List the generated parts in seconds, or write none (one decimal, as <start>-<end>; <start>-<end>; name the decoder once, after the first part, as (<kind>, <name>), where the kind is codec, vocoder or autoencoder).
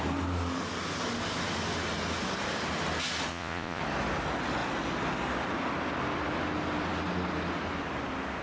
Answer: 3.3-3.8 (vocoder, Vocos)